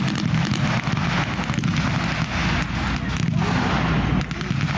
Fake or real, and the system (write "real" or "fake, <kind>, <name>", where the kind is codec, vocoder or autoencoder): real